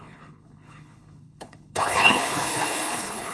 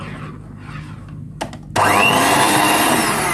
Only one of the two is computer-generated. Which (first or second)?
first